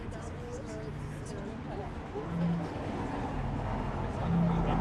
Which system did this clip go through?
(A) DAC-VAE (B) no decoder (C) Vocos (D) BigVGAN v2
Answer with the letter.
B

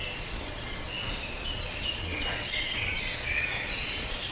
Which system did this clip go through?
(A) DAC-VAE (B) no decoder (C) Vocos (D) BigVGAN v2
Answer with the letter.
C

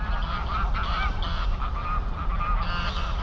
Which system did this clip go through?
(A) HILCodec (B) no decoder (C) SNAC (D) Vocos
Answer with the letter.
B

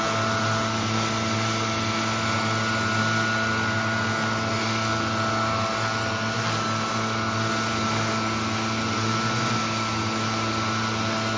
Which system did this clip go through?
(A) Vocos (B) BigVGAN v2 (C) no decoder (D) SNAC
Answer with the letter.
C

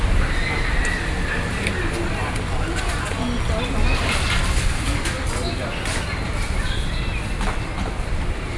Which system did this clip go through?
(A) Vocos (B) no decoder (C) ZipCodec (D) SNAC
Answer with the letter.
B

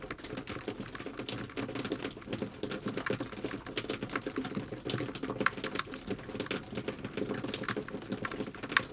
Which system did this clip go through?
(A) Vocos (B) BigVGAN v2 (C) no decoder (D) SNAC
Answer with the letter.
C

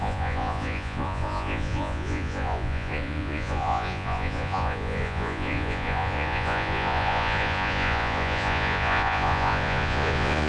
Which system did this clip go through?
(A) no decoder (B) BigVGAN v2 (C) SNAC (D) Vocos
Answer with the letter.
D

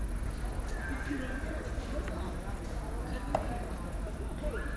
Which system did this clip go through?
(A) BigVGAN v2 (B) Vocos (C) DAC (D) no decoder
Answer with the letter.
D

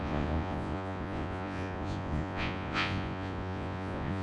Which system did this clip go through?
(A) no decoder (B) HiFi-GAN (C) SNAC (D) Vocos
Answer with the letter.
D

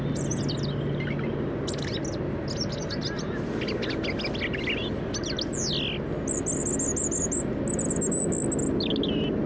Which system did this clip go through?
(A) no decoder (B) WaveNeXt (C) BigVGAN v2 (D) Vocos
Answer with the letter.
A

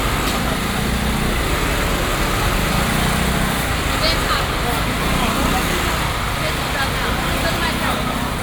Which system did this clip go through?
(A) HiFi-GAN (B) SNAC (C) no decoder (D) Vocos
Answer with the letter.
C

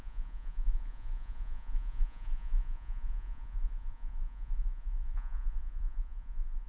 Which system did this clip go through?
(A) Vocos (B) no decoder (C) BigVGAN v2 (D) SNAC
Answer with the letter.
A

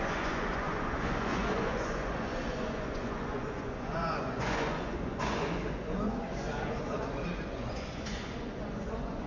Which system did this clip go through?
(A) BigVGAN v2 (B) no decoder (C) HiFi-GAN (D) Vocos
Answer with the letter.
D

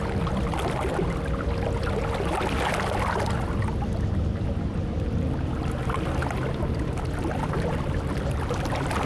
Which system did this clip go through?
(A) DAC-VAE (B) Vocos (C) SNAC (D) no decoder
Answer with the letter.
D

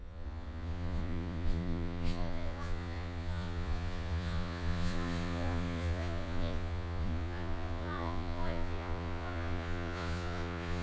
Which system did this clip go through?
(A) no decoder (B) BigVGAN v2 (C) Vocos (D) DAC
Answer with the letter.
C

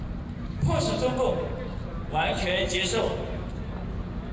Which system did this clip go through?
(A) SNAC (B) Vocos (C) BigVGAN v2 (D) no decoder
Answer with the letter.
D